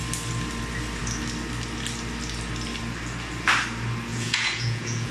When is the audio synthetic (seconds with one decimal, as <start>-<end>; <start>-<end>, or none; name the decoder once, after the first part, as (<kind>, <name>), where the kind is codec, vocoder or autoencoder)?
4.1-5.1 (vocoder, Vocos)